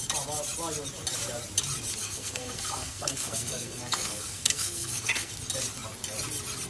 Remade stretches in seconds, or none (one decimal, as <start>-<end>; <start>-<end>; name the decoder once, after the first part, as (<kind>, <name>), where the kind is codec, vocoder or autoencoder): 2.0-5.3 (codec, SNAC)